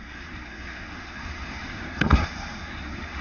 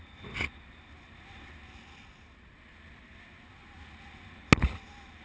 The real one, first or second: second